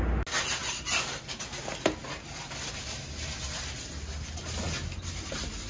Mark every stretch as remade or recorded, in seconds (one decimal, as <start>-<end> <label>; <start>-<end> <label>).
0.0-5.7 recorded